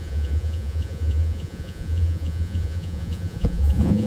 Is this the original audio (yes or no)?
no